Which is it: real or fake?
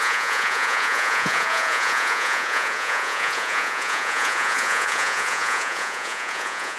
fake